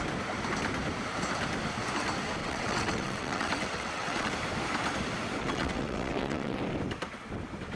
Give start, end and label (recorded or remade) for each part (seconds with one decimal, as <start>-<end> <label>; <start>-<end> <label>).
0.0-2.4 recorded; 2.4-4.3 remade; 4.3-5.4 recorded; 5.4-6.6 remade; 6.6-7.8 recorded